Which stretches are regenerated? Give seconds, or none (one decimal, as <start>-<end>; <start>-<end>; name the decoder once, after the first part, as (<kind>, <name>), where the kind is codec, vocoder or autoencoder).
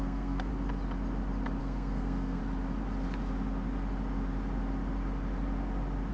0.0-0.5 (codec, SNAC); 1.6-2.4